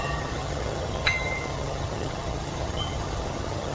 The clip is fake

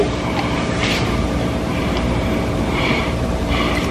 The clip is fake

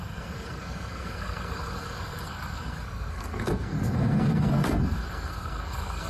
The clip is fake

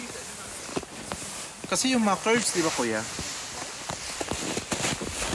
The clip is real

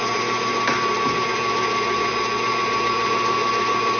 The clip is real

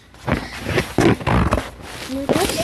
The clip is real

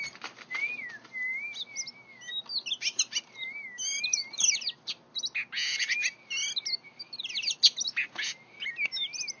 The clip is real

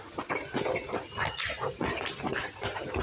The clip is real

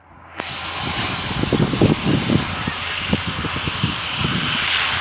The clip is real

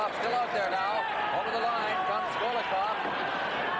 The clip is real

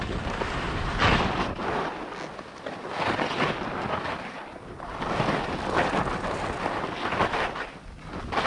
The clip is real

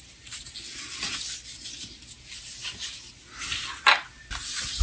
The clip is real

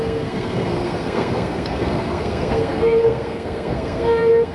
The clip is fake